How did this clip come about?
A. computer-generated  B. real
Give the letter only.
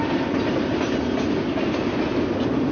B